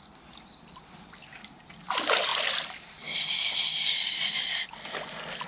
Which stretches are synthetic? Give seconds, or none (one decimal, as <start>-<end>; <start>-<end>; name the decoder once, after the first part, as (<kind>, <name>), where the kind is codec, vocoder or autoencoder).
0.0-5.5 (vocoder, BigVGAN v2)